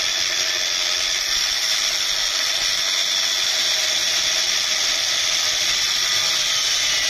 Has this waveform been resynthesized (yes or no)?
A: no